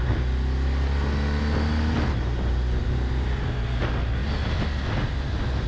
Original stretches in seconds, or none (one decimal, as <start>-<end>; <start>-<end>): 0.0-5.7